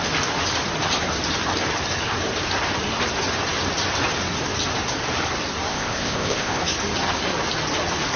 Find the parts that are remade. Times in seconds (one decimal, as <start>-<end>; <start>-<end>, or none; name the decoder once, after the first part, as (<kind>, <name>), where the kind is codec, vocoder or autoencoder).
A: 5.7-6.6 (codec, ZipCodec)